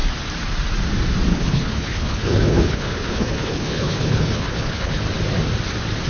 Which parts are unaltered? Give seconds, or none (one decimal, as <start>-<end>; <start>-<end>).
0.0-1.3; 5.0-6.1